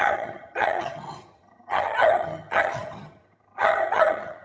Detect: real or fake fake